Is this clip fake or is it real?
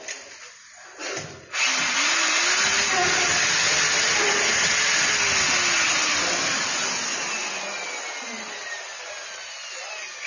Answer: real